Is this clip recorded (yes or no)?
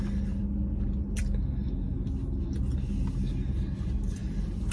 yes